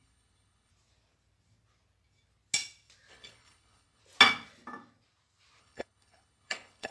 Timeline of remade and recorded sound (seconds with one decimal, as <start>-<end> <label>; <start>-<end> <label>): 0.0-0.7 remade; 0.7-3.1 recorded; 3.1-4.0 remade; 4.0-5.6 recorded; 5.6-6.9 remade